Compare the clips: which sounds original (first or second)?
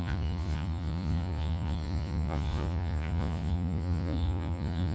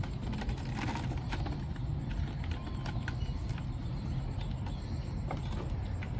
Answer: second